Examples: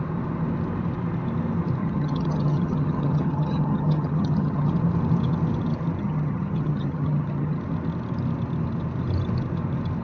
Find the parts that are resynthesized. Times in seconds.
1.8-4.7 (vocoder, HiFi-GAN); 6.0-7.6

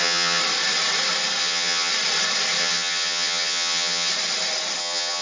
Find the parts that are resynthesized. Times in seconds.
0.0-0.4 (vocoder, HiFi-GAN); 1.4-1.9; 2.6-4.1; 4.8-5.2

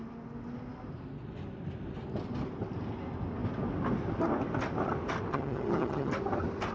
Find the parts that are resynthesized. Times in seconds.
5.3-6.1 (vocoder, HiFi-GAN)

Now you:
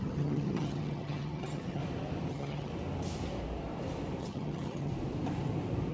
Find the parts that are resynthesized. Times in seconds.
0.0-1.8 (vocoder, HiFi-GAN); 2.3-2.7; 4.2-4.9

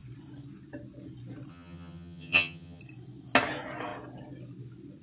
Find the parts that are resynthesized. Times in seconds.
1.5-2.8 (vocoder, HiFi-GAN)